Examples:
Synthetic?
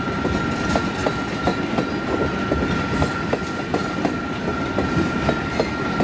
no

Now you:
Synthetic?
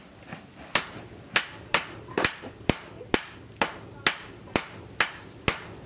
no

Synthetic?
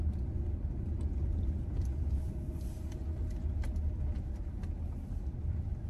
no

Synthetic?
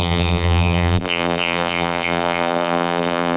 yes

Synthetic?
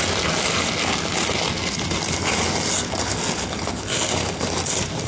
no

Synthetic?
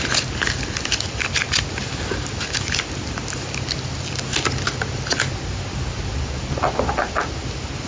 no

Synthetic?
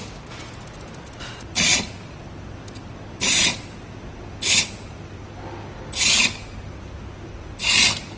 no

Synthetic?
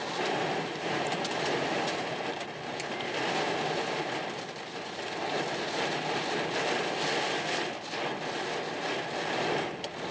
no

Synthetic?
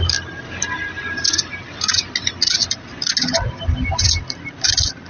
no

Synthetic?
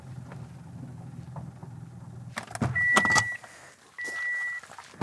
no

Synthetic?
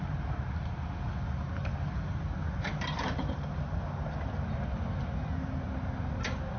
no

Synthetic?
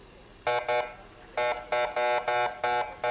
no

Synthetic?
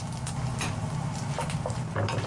no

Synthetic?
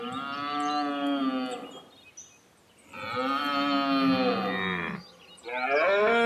no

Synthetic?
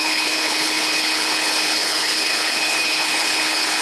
yes